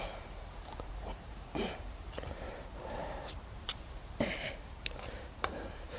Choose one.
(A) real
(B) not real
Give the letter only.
B